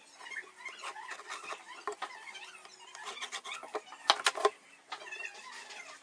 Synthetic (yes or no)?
no